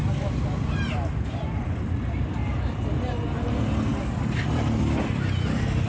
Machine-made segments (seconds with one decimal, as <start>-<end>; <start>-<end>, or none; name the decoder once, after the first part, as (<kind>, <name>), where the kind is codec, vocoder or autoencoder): 0.0-2.0 (vocoder, BigVGAN v2)